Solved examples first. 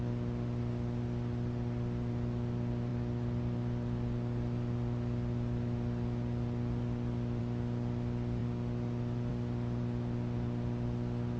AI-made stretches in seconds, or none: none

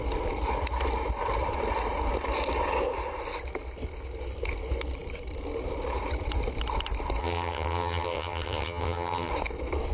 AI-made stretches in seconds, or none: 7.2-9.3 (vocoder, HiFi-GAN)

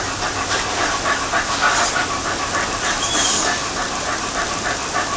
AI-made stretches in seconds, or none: 3.6-4.2 (vocoder, BigVGAN v2)

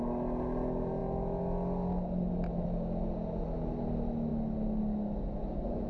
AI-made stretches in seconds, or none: none

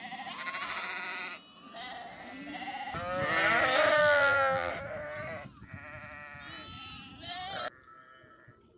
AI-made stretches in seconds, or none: 4.0-4.7 (vocoder, BigVGAN v2)

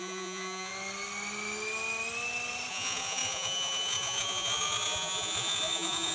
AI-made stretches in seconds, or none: 0.0-0.7 (vocoder, Vocos); 2.7-6.1

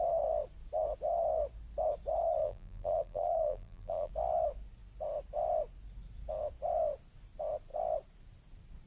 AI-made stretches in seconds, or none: 2.4-4.1 (vocoder, BigVGAN v2)

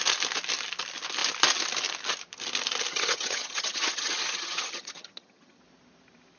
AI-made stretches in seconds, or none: 2.9-5.6 (vocoder, HiFi-GAN)